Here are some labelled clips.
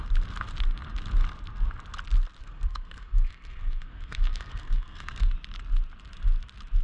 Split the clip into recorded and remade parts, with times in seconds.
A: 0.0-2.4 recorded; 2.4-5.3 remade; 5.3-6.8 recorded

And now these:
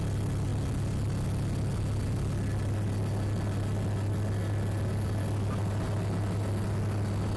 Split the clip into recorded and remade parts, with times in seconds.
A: 0.0-7.4 recorded

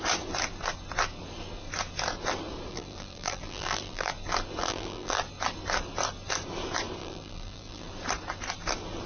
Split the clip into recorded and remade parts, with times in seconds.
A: 0.0-2.7 recorded; 2.7-4.1 remade; 4.1-4.6 recorded; 4.6-5.2 remade; 5.2-7.0 recorded; 7.0-7.9 remade; 7.9-9.1 recorded

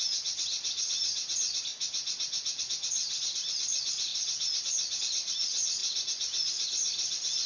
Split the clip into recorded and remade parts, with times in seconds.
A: 0.0-1.7 remade; 1.7-2.6 recorded; 2.6-4.1 remade; 4.1-5.0 recorded; 5.0-7.5 remade

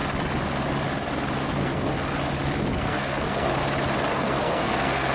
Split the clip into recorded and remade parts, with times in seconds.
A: 0.0-1.5 recorded; 1.5-1.9 remade; 1.9-2.7 recorded; 2.7-3.6 remade; 3.6-4.1 recorded; 4.1-5.1 remade

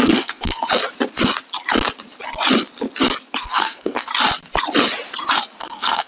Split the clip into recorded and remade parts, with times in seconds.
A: 0.0-0.6 remade; 0.6-3.4 recorded; 3.4-4.1 remade; 4.1-5.6 recorded; 5.6-6.1 remade

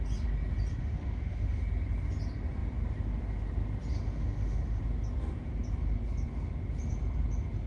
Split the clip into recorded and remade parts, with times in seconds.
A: 0.0-0.8 recorded; 0.8-1.6 remade; 1.6-3.9 recorded; 3.9-4.8 remade; 4.8-7.7 recorded